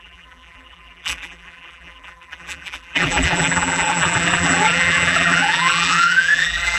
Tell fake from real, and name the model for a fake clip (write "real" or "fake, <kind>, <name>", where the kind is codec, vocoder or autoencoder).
fake, vocoder, BigVGAN v2